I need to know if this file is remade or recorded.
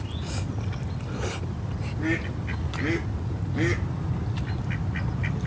recorded